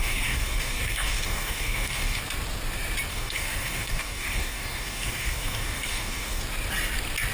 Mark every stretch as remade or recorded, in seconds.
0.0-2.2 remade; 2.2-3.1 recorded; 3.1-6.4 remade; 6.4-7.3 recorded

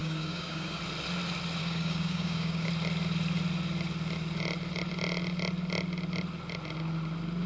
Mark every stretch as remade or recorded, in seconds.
0.0-0.8 remade; 0.8-1.6 recorded; 1.6-2.7 remade; 2.7-7.5 recorded

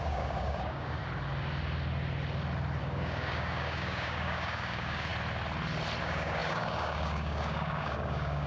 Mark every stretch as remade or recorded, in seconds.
0.0-1.0 remade; 1.0-2.8 recorded; 2.8-5.1 remade; 5.1-6.0 recorded; 6.0-8.5 remade

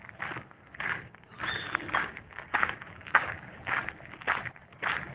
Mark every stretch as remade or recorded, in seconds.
0.0-0.7 recorded; 0.7-3.8 remade; 3.8-5.1 recorded